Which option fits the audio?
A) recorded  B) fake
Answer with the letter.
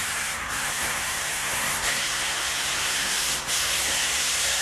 B